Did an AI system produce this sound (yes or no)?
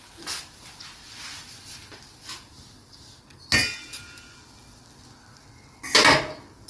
no